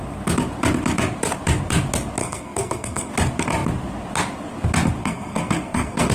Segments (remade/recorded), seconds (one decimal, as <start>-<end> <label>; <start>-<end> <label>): 0.0-2.2 recorded; 2.2-3.1 remade; 3.1-5.0 recorded; 5.0-6.1 remade